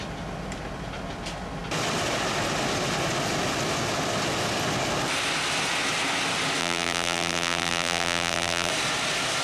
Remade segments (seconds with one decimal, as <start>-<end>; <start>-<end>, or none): 6.6-8.7